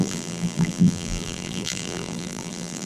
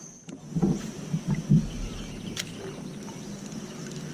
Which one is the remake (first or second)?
first